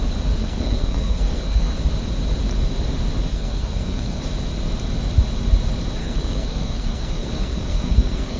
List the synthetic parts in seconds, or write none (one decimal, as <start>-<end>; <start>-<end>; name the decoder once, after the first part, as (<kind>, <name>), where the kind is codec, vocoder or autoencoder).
0.4-1.8 (codec, SNAC); 3.3-4.2; 6.0-8.4